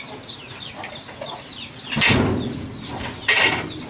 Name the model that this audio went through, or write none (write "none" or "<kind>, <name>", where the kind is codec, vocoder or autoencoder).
none